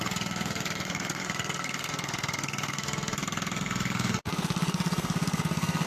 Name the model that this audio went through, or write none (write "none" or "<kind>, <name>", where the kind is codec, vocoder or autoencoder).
codec, SNAC